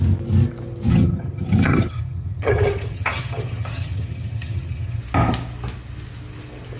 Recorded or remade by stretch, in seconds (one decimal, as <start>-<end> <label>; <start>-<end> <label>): 0.0-0.9 recorded; 0.9-5.0 remade; 5.0-6.8 recorded